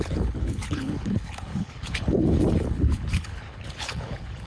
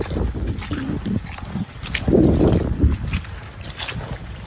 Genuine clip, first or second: second